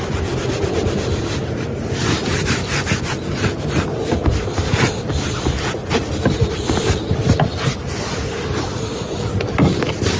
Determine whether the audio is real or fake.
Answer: real